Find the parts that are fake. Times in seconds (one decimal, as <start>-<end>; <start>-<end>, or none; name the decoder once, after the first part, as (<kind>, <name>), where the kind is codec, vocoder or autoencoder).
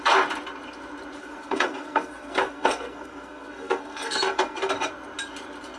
1.2-4.7 (codec, SNAC)